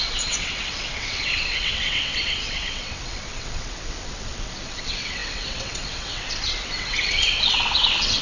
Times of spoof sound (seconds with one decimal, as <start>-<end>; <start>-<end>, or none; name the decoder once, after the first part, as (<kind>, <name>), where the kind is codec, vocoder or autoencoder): 0.0-8.2 (vocoder, WaveNeXt)